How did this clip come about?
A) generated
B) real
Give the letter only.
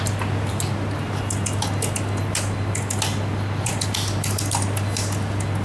B